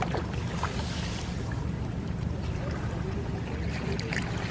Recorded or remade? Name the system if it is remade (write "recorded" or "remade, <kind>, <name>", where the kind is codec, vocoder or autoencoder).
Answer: recorded